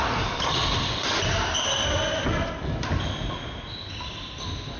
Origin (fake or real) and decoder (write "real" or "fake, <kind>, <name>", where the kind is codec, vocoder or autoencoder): real